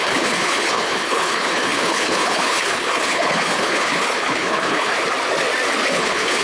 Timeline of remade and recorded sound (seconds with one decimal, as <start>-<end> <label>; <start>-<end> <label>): 0.0-4.9 remade; 4.9-5.8 recorded; 5.8-6.4 remade